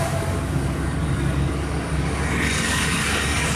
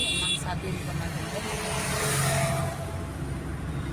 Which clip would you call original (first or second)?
second